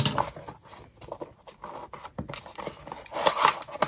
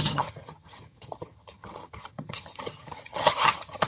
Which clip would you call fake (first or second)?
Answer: second